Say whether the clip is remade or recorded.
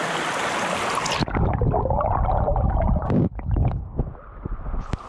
recorded